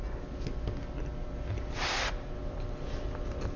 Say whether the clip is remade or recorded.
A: recorded